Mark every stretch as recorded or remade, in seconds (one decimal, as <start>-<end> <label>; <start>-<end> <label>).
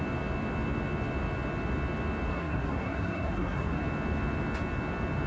0.0-2.3 recorded; 2.3-3.8 remade; 3.8-5.3 recorded